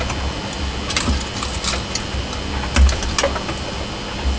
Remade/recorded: recorded